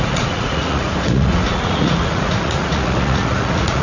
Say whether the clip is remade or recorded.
remade